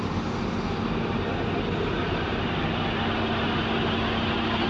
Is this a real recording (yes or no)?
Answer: yes